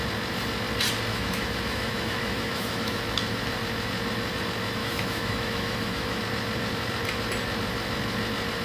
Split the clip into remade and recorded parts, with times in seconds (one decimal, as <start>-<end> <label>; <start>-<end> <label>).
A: 0.0-1.1 recorded; 1.1-3.0 remade; 3.0-4.8 recorded; 4.8-6.2 remade; 6.2-8.6 recorded